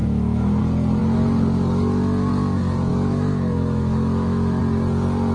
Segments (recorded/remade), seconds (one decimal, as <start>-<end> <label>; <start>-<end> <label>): 0.0-0.6 remade; 0.6-2.9 recorded; 2.9-4.6 remade; 4.6-5.3 recorded

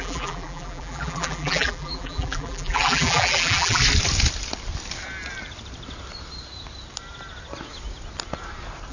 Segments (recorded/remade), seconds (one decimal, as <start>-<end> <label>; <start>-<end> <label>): 0.0-3.8 remade; 3.8-8.9 recorded

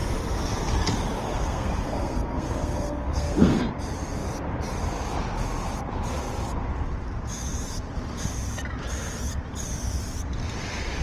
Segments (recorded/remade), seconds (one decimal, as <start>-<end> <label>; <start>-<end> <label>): 0.0-1.3 recorded; 1.3-3.6 remade; 3.6-11.0 recorded

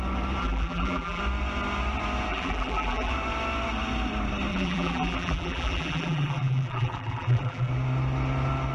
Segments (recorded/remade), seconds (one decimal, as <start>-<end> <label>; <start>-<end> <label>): 0.0-0.4 recorded; 0.4-1.2 remade; 1.2-2.3 recorded; 2.3-3.1 remade; 3.1-4.5 recorded; 4.5-7.7 remade; 7.7-8.7 recorded